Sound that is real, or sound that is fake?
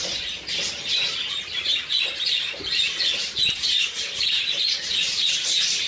real